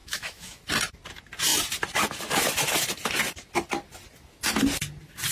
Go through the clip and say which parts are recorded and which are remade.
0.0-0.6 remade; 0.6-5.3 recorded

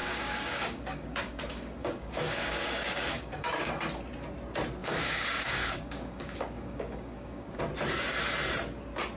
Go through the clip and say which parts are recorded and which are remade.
0.0-3.7 remade; 3.7-4.8 recorded; 4.8-7.6 remade; 7.6-9.2 recorded

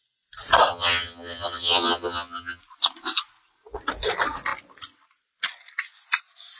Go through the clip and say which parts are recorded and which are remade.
0.0-0.7 recorded; 0.7-2.6 remade; 2.6-6.6 recorded

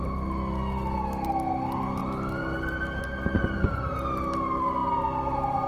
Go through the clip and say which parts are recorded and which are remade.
0.0-5.7 recorded

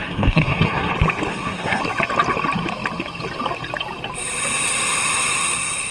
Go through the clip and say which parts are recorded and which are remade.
0.0-0.9 remade; 0.9-1.3 recorded; 1.3-1.8 remade; 1.8-5.9 recorded

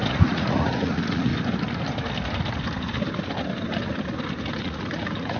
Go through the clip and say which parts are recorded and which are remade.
0.0-1.3 remade; 1.3-4.5 recorded; 4.5-5.4 remade

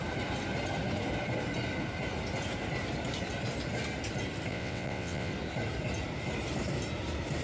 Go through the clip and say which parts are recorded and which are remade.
0.0-4.5 recorded; 4.5-5.3 remade; 5.3-7.4 recorded

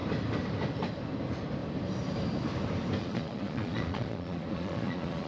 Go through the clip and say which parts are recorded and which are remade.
0.0-3.0 recorded; 3.0-5.3 remade